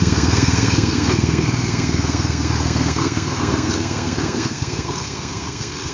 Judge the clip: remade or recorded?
remade